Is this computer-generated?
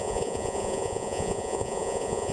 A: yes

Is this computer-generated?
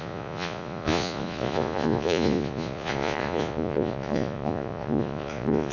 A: yes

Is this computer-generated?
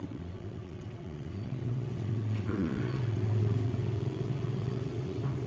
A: yes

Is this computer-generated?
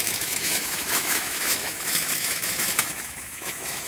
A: yes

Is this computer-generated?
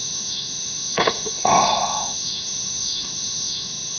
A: yes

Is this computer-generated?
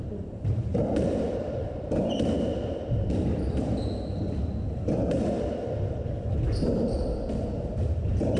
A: yes